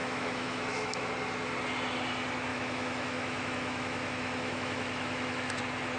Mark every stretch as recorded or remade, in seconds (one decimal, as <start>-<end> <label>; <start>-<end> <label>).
0.0-1.1 remade; 1.1-2.5 recorded; 2.5-5.6 remade; 5.6-6.0 recorded